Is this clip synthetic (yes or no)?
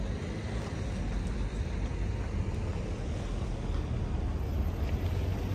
no